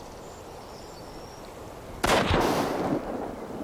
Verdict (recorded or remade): recorded